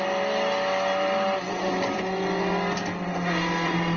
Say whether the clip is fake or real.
real